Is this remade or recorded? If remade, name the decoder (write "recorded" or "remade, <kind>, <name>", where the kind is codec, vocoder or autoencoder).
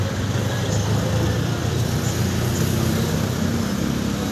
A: recorded